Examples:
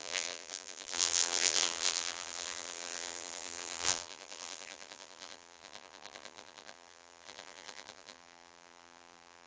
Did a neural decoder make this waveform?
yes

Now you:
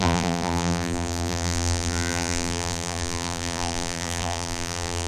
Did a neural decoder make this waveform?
yes